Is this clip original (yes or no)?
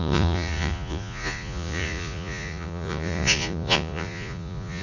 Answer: no